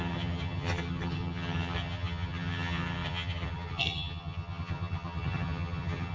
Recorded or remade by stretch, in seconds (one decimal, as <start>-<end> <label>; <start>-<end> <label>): 0.0-6.1 remade